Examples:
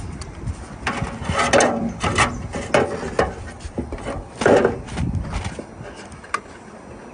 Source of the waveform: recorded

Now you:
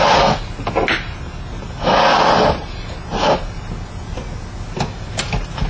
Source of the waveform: recorded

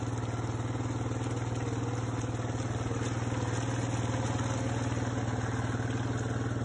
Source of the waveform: recorded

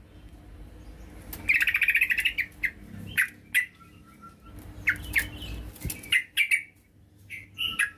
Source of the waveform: recorded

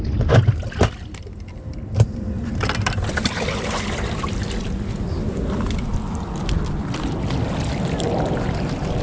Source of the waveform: recorded